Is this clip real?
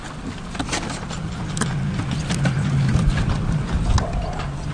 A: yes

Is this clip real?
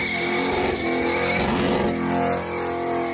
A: yes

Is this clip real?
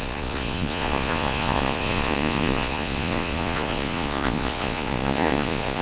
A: no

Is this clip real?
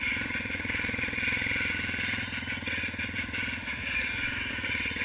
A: no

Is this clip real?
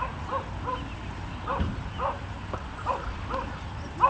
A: yes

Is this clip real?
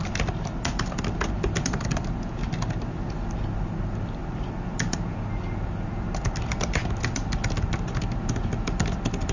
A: yes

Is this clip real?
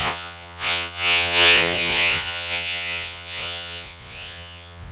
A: no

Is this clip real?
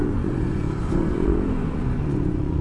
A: no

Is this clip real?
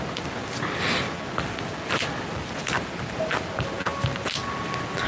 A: yes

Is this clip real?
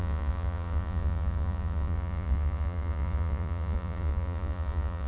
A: no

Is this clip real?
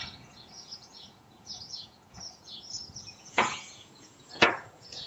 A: no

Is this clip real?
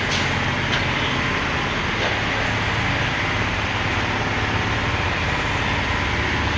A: yes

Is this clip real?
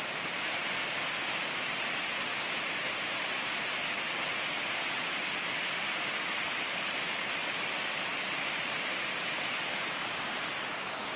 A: yes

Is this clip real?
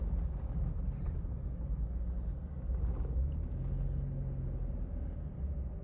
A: yes